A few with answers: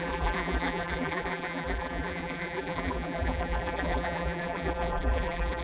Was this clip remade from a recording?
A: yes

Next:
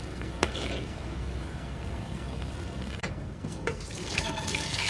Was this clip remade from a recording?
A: yes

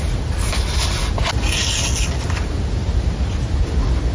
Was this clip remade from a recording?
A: no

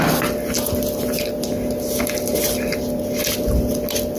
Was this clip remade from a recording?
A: no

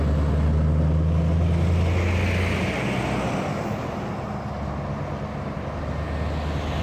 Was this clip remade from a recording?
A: no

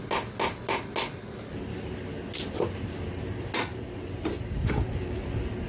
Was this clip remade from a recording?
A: no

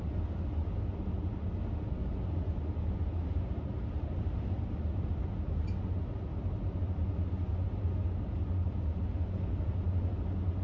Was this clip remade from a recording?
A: no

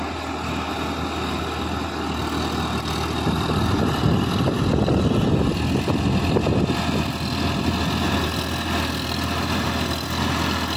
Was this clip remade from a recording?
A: no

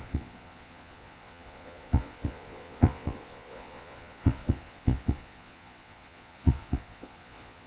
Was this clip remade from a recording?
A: yes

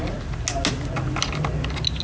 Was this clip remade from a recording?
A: no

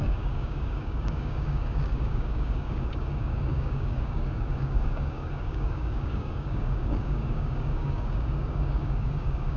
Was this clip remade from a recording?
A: yes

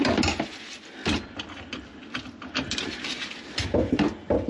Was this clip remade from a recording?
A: no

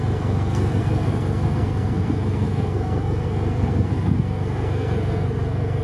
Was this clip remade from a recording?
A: yes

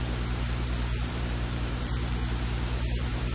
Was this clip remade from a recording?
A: yes